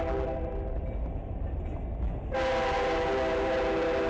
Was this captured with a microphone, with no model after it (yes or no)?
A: yes